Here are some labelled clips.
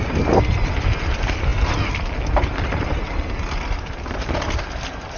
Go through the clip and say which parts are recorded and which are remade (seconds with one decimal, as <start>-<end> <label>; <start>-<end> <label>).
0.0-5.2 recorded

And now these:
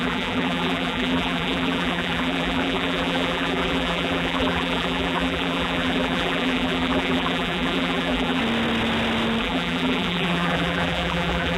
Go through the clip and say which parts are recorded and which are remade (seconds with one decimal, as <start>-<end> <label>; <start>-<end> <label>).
0.0-8.4 remade; 8.4-9.4 recorded; 9.4-11.6 remade

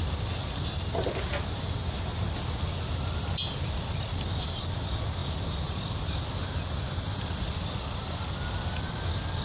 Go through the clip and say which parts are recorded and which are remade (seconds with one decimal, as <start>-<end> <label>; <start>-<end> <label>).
0.0-9.4 recorded

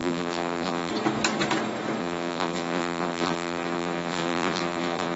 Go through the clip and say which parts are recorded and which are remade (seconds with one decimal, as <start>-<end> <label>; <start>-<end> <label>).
0.0-0.9 remade; 0.9-2.0 recorded; 2.0-5.2 remade

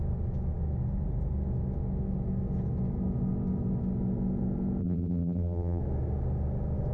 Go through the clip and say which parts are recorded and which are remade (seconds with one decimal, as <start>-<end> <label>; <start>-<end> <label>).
0.0-4.8 recorded; 4.8-5.8 remade; 5.8-6.9 recorded